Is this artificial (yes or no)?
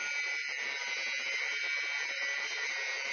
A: no